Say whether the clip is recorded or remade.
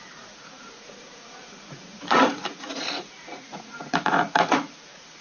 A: remade